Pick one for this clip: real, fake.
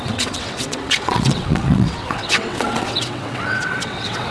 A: fake